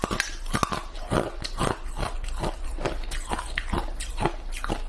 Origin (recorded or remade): recorded